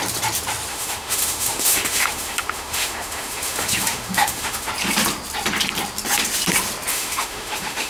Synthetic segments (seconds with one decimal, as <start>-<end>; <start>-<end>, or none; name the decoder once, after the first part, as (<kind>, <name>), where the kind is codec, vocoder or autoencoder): 0.7-4.7 (autoencoder, DAC-VAE); 6.9-7.9